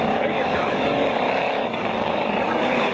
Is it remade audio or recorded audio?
remade